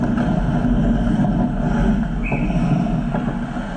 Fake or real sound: real